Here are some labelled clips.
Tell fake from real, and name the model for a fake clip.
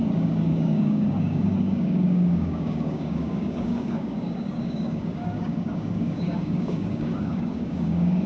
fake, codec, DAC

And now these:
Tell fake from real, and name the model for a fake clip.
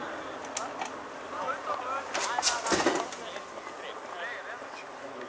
real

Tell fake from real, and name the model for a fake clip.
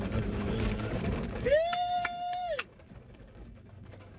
fake, codec, DAC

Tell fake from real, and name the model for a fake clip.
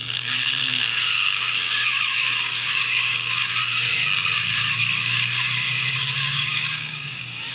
fake, codec, DAC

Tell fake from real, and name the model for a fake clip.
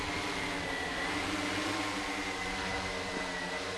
real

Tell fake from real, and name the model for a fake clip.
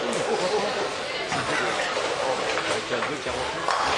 real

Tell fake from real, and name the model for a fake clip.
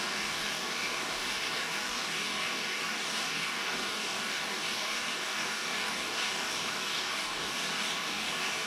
fake, codec, DAC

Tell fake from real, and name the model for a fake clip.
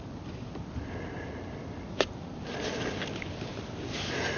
real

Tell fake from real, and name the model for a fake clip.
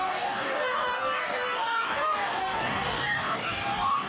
fake, codec, DAC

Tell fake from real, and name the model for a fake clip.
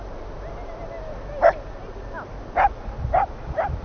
real